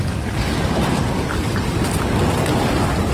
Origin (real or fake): real